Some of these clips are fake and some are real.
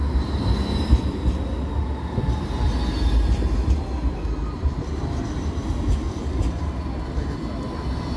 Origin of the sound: real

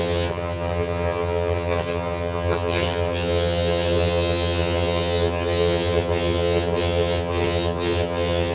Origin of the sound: fake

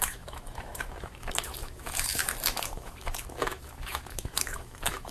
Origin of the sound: fake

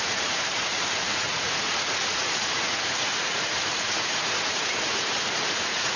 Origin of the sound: fake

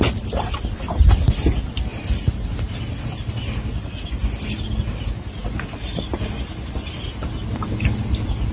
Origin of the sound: real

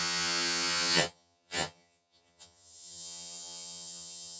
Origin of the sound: fake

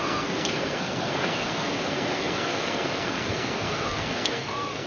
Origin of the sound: fake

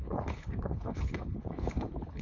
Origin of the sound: fake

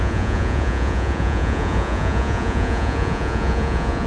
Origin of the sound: fake